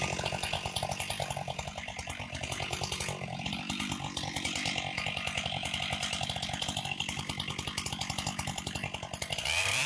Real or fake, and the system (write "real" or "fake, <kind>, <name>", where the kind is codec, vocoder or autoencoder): fake, vocoder, BigVGAN v2